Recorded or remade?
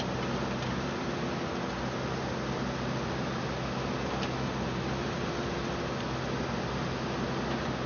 recorded